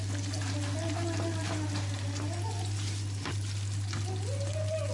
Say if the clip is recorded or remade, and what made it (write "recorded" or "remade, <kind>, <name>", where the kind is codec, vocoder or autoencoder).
recorded